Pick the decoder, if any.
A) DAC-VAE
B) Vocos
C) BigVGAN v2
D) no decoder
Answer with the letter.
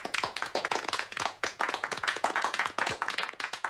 B